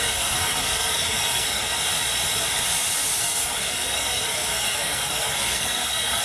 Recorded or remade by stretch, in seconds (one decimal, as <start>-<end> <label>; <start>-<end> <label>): 0.0-1.6 remade; 1.6-3.2 recorded; 3.2-6.2 remade